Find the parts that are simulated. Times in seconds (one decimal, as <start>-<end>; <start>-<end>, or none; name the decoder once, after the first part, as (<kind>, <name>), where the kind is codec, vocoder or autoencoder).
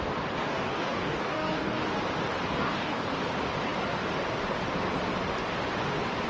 0.4-1.8 (codec, DAC); 2.5-3.1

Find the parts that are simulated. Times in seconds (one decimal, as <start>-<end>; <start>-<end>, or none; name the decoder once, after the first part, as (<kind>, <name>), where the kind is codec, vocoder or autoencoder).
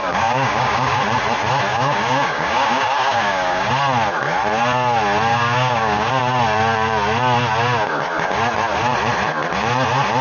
0.0-1.0 (codec, DAC); 1.7-3.7; 5.3-6.1